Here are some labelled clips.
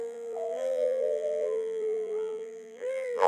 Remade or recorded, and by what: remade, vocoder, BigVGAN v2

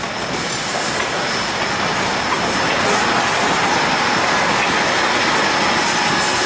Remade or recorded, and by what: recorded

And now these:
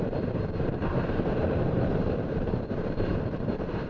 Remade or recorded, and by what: remade, vocoder, BigVGAN v2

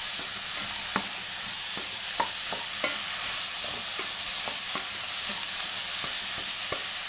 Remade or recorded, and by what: recorded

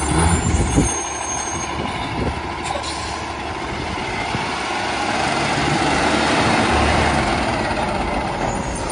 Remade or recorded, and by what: recorded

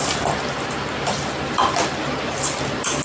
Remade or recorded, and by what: remade, vocoder, BigVGAN v2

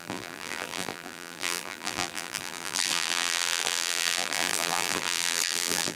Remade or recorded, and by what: remade, vocoder, BigVGAN v2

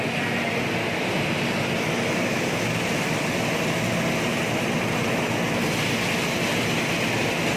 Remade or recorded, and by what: recorded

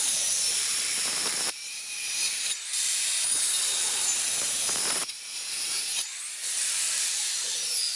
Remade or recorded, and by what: remade, vocoder, BigVGAN v2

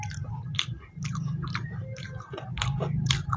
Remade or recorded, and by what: remade, vocoder, BigVGAN v2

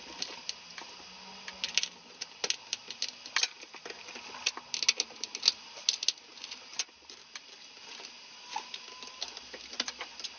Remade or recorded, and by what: recorded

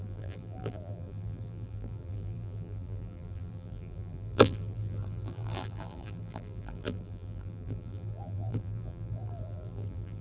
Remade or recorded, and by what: remade, vocoder, BigVGAN v2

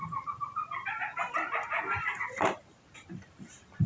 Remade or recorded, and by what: remade, vocoder, BigVGAN v2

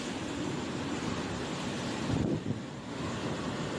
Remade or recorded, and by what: recorded